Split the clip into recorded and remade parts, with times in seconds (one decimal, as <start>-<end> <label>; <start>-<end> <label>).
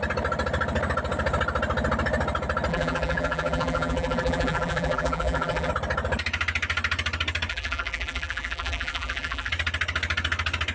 0.0-2.7 recorded; 2.7-5.7 remade; 5.7-7.5 recorded; 7.5-9.5 remade; 9.5-10.7 recorded